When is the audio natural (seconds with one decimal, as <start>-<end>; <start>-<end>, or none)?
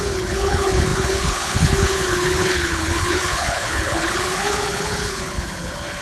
none